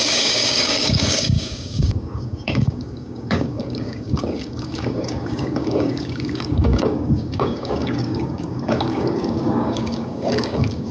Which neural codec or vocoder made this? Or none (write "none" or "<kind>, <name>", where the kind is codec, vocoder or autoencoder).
codec, DAC